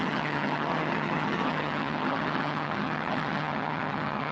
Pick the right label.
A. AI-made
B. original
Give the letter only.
A